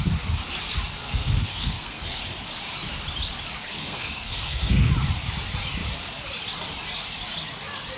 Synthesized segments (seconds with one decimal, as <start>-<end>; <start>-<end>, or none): 1.0-2.2; 3.8-4.9